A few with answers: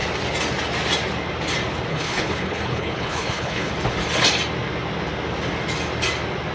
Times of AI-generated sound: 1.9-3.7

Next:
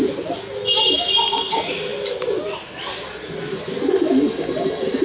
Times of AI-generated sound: 0.6-1.1

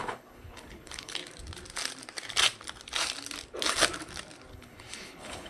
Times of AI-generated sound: 0.0-1.2; 4.5-5.5

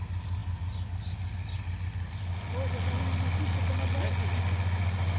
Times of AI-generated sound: none

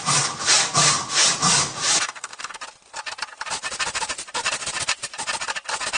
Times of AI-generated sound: 2.0-2.6

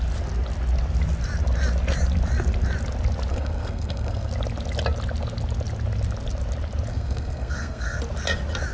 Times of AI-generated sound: 3.3-4.3; 6.9-8.0

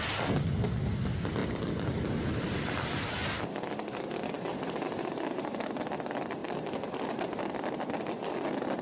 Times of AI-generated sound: 1.4-2.1; 4.5-5.1; 6.4-7.9